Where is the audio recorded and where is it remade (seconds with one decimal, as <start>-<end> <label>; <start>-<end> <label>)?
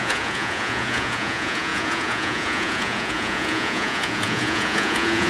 0.0-5.3 remade